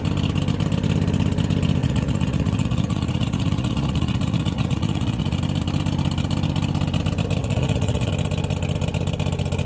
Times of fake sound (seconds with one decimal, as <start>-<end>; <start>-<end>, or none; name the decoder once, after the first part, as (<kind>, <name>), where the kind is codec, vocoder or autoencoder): 1.8-5.4 (vocoder, Vocos); 7.4-8.1